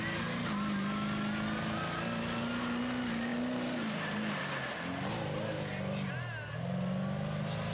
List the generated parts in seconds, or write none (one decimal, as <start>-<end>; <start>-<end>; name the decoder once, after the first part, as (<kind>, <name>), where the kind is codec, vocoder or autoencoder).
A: none